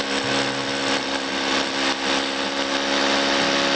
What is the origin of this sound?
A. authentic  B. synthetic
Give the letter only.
A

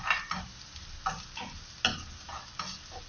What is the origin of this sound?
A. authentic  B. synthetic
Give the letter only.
A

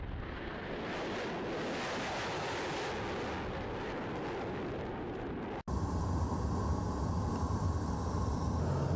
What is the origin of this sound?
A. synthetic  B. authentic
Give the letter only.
B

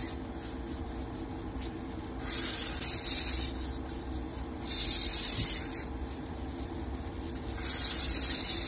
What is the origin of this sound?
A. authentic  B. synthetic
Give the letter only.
A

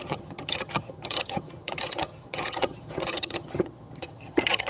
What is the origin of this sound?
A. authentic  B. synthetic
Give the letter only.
B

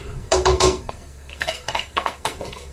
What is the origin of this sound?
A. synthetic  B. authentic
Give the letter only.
A